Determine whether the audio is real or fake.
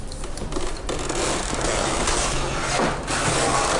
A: real